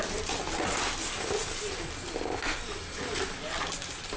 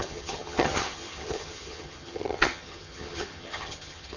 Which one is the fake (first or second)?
second